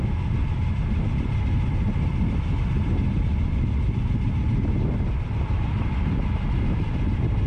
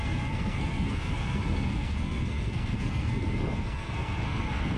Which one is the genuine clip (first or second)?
first